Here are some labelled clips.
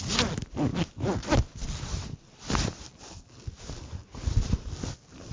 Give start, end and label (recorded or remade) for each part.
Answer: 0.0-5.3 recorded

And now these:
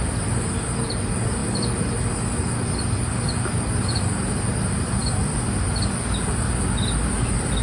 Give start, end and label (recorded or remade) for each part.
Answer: 0.0-7.6 recorded

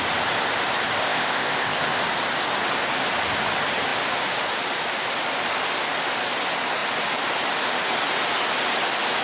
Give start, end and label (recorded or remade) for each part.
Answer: 0.0-1.0 recorded; 1.0-1.8 remade; 1.8-9.2 recorded

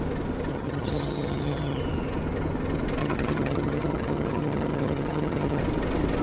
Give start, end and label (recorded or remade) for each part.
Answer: 0.0-0.5 recorded; 0.5-1.8 remade; 1.8-3.0 recorded; 3.0-5.6 remade; 5.6-6.2 recorded

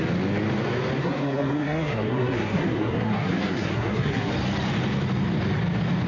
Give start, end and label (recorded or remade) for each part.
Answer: 0.0-1.0 recorded; 1.0-4.3 remade; 4.3-6.1 recorded

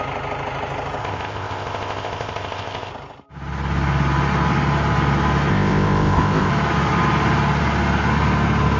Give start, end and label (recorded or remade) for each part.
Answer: 0.0-1.0 recorded; 1.0-2.9 remade; 2.9-5.5 recorded; 5.5-6.5 remade; 6.5-8.8 recorded

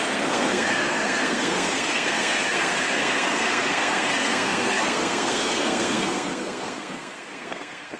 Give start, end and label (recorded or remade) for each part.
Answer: 0.0-8.0 remade